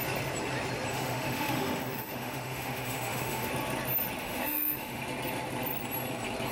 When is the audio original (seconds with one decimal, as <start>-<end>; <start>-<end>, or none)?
0.0-0.9; 3.5-4.2; 5.0-6.5